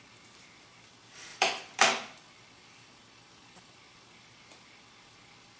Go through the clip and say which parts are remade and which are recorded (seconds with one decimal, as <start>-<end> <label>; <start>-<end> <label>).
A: 0.0-1.3 recorded; 1.3-3.7 remade; 3.7-5.6 recorded